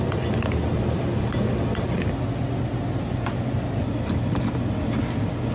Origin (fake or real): real